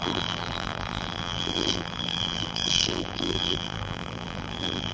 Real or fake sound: fake